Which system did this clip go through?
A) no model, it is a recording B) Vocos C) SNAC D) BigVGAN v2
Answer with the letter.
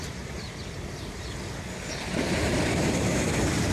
A